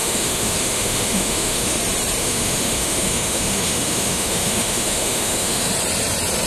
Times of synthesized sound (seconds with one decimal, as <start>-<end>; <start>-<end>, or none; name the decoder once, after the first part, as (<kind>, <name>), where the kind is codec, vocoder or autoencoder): 0.0-1.8 (autoencoder, DAC-VAE); 2.2-5.7